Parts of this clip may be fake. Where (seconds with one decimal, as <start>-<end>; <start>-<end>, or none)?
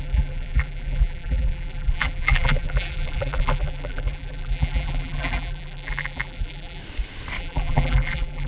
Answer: 0.0-6.8; 7.4-8.5